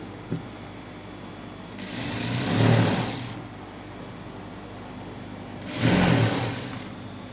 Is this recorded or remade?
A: recorded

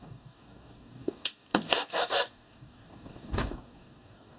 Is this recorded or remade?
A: remade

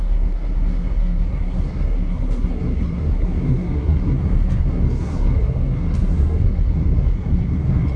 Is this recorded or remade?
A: remade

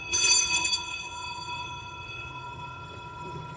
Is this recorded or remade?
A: remade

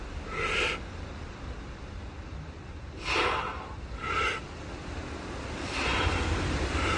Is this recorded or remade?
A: recorded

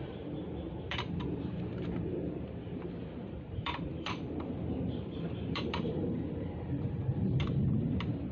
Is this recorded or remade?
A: remade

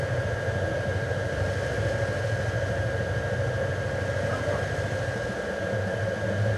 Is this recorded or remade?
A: recorded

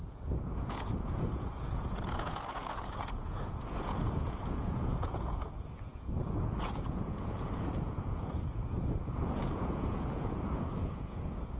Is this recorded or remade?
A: remade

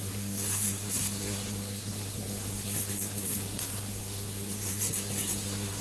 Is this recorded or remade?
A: remade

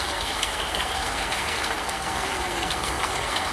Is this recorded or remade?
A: remade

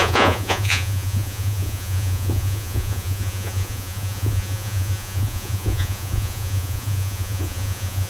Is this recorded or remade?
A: remade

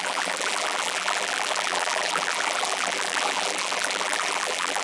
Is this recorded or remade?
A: remade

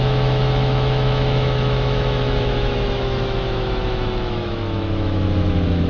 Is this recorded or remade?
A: remade